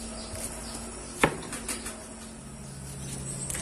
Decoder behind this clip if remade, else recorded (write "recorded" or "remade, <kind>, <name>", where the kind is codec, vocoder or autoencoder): recorded